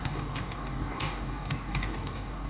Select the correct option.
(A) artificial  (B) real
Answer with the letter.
A